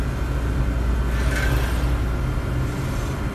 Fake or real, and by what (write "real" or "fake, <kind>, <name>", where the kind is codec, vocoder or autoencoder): real